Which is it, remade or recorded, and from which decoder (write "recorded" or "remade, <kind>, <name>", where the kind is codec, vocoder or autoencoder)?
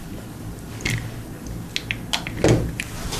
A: recorded